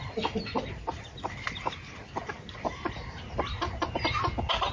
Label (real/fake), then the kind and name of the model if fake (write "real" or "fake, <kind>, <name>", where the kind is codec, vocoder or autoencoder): real